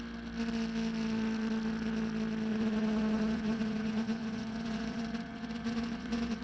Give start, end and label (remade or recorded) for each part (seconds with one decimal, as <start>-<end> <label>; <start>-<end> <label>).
0.0-2.5 recorded; 2.5-6.4 remade